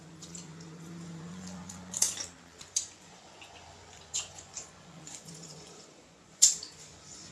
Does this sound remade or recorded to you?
remade